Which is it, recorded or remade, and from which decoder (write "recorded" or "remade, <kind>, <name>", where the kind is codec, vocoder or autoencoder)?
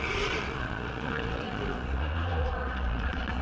remade, vocoder, Vocos